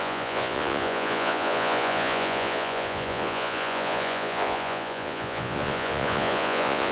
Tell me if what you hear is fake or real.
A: fake